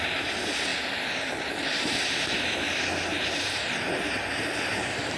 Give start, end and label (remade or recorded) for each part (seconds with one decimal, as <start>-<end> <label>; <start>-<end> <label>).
0.0-0.7 remade; 0.7-1.7 recorded; 1.7-5.2 remade